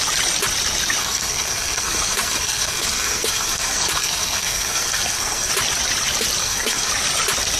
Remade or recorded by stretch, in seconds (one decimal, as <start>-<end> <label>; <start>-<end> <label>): 0.0-1.0 recorded; 1.0-5.5 remade; 5.5-6.4 recorded; 6.4-6.9 remade; 6.9-7.6 recorded